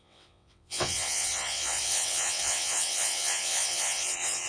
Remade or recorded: remade